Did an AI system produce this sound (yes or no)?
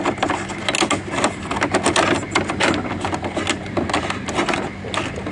no